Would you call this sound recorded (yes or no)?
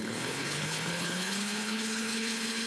no